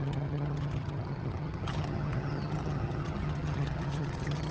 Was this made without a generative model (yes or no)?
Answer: no